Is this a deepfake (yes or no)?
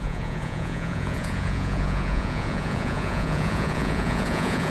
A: yes